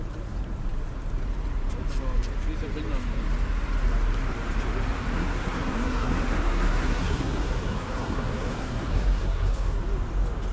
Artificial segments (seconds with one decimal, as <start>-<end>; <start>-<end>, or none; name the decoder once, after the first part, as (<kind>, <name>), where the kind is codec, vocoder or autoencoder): 5.1-9.8 (codec, SNAC)